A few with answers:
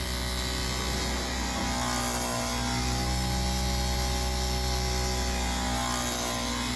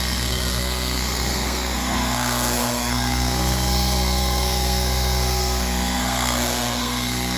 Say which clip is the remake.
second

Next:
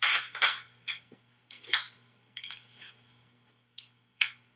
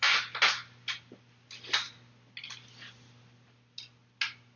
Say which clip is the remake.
first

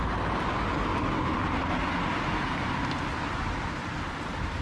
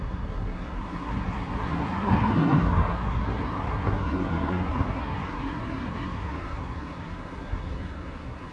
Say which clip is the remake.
second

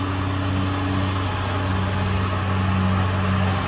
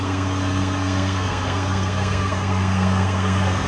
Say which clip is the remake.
second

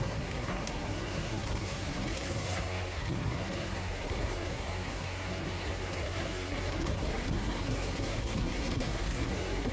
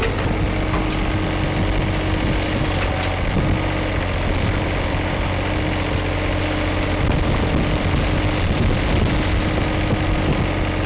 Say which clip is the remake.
first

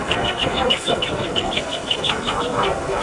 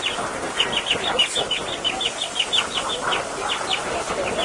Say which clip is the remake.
first